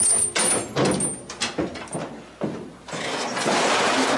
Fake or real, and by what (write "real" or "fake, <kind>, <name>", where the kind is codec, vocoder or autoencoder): real